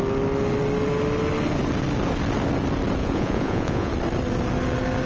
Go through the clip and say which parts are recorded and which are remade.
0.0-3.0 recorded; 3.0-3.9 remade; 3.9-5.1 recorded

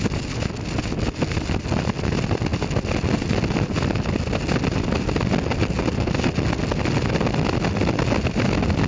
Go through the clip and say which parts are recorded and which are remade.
0.0-8.9 recorded

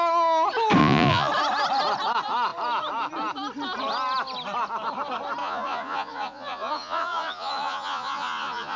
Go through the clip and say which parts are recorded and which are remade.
0.0-0.8 recorded; 0.8-1.3 remade; 1.3-5.4 recorded; 5.4-8.8 remade

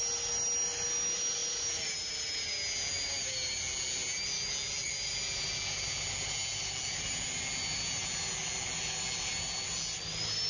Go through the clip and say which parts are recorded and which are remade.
0.0-10.5 recorded

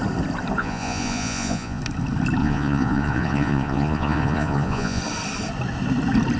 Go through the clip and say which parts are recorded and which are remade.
0.0-0.6 recorded; 0.6-1.8 remade; 1.8-2.4 recorded; 2.4-5.0 remade; 5.0-6.4 recorded

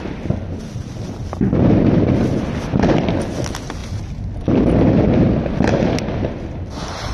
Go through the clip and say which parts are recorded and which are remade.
0.0-7.1 recorded